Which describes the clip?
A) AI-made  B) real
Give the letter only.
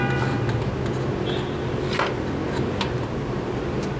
B